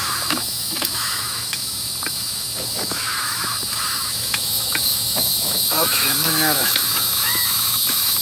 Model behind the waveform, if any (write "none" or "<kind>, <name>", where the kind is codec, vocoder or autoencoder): autoencoder, DAC-VAE